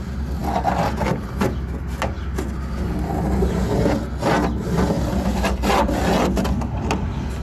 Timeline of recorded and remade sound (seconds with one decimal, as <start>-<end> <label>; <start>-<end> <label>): 0.0-7.4 recorded